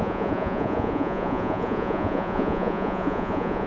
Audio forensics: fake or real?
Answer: fake